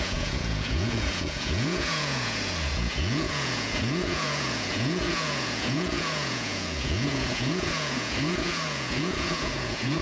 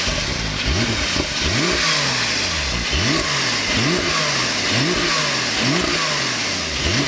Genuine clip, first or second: second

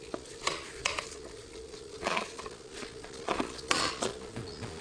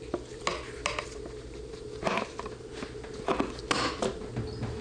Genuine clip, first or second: second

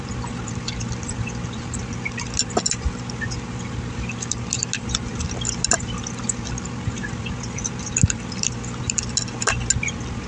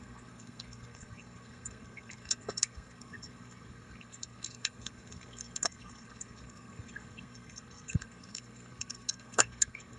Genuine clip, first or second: first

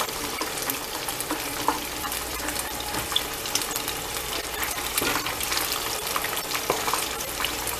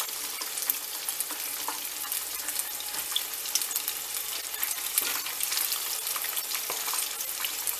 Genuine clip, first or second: second